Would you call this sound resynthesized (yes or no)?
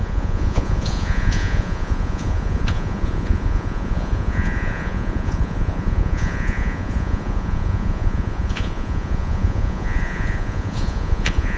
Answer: yes